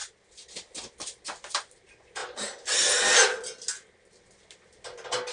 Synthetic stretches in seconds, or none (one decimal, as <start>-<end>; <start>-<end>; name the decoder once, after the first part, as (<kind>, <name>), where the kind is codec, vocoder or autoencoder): none